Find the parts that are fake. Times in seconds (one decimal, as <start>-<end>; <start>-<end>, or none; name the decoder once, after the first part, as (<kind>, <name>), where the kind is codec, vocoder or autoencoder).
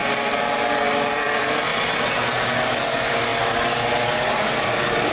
1.1-1.7 (vocoder, BigVGAN v2); 2.7-3.3